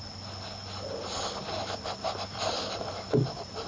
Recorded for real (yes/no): yes